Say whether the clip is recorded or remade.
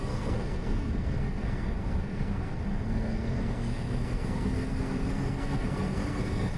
remade